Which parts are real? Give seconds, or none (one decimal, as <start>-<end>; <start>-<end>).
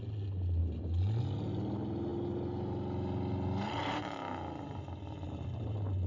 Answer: 0.0-6.1